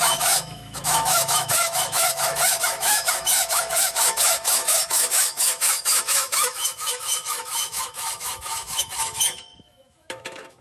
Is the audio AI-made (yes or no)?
yes